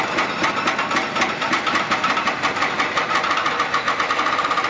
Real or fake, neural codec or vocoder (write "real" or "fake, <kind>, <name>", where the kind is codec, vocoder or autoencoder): real